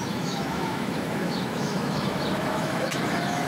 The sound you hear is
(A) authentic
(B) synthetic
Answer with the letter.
B